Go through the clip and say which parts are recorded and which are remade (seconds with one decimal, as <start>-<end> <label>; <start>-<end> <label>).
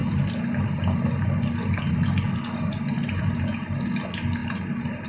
0.0-5.1 recorded